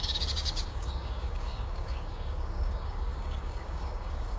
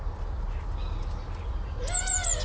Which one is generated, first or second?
first